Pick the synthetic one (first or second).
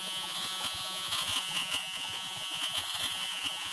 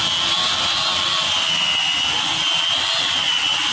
first